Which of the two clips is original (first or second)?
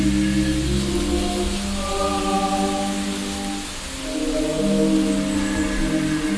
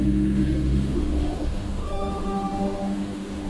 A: first